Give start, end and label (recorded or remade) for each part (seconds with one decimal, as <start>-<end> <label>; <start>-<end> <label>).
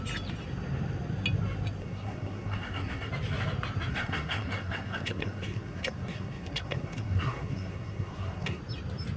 0.0-1.8 recorded; 1.8-3.1 remade; 3.1-3.9 recorded; 3.9-8.6 remade; 8.6-9.2 recorded